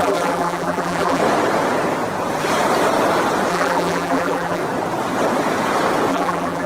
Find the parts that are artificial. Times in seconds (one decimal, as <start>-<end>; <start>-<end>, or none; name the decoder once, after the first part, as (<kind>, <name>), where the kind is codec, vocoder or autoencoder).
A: 0.0-1.2 (vocoder, BigVGAN v2); 3.5-4.6; 6.1-6.7